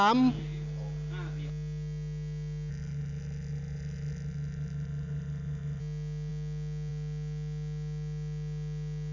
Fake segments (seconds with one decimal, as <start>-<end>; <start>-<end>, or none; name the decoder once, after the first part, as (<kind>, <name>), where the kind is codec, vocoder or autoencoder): 2.7-5.8 (vocoder, BigVGAN v2)